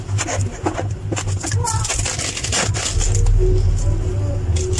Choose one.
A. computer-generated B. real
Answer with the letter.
B